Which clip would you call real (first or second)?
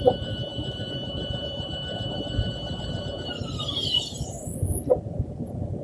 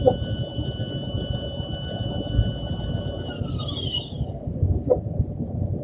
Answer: second